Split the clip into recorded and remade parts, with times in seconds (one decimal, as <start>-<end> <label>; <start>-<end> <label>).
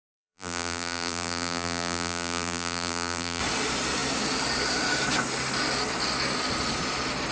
0.0-3.4 remade; 3.4-7.3 recorded